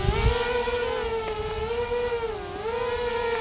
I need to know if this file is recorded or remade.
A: recorded